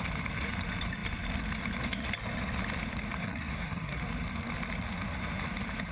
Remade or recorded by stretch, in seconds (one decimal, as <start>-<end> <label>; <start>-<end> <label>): 0.0-3.2 recorded; 3.2-4.0 remade; 4.0-5.9 recorded